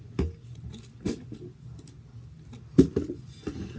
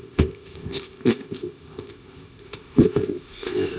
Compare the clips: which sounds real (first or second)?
first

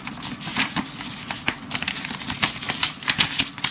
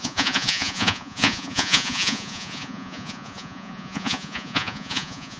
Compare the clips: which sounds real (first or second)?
first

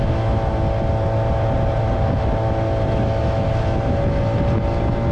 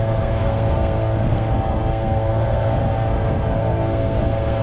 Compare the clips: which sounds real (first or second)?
first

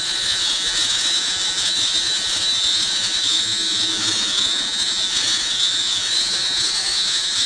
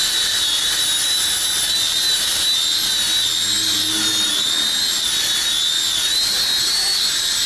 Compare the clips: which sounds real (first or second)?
second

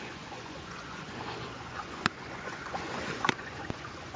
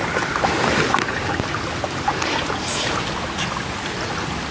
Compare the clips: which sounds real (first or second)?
second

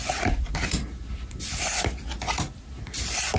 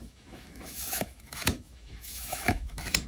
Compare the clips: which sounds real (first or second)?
first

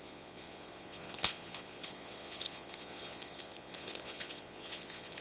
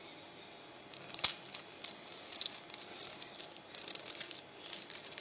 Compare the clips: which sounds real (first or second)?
second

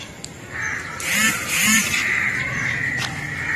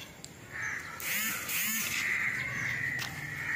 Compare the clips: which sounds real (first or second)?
second